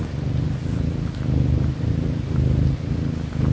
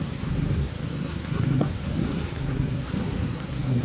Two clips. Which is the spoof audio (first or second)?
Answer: second